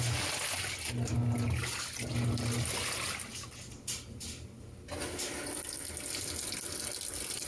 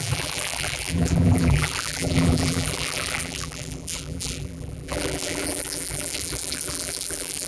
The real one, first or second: first